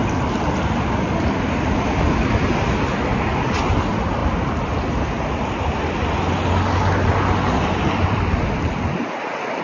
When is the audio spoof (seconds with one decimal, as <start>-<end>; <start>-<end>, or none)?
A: none